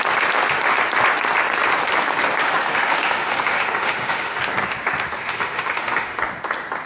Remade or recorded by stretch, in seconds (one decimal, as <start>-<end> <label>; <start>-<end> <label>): 0.0-2.4 recorded; 2.4-4.4 remade; 4.4-5.3 recorded; 5.3-6.2 remade; 6.2-6.9 recorded